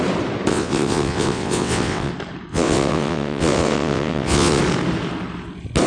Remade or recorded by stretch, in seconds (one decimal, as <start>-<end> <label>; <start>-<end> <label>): 0.0-0.5 recorded; 0.5-2.1 remade; 2.1-2.5 recorded; 2.5-4.6 remade; 4.6-5.9 recorded